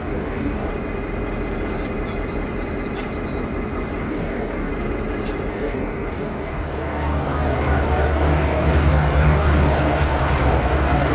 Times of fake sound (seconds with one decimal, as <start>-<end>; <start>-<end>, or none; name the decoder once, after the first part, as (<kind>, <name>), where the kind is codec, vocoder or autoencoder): 0.0-0.7 (codec, DAC); 4.0-4.7; 5.5-11.1